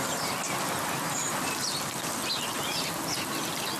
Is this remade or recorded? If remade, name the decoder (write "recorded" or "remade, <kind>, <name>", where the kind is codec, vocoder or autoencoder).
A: recorded